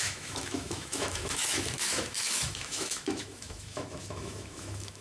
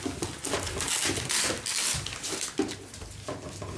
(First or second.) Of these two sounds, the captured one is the second